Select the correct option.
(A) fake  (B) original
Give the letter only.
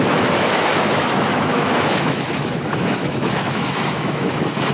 A